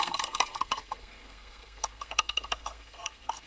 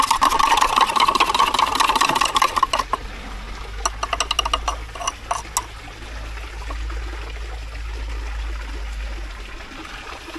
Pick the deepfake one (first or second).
first